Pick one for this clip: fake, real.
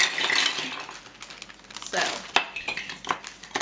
real